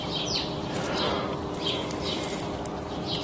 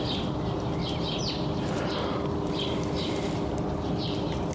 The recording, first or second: first